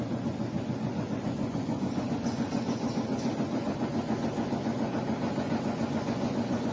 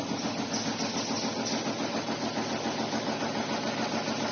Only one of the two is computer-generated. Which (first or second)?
first